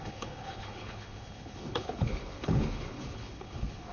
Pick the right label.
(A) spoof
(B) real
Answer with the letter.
A